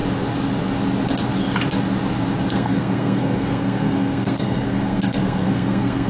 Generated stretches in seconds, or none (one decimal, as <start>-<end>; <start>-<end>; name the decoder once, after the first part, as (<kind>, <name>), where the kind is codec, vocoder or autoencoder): 2.5-6.1 (codec, SNAC)